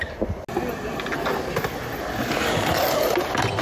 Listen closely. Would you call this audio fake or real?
real